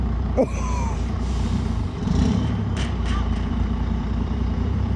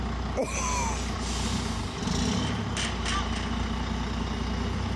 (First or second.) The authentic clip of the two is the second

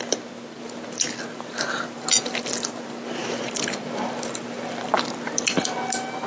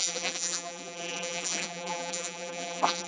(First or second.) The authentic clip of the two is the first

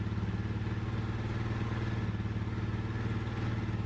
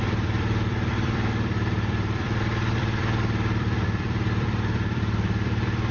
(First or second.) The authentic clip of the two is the first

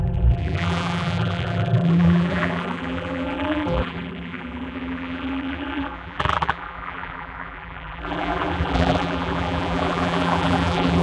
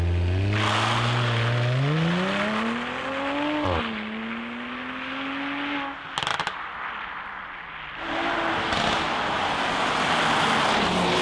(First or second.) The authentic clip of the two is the second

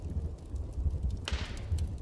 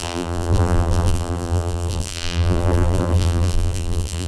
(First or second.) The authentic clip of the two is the first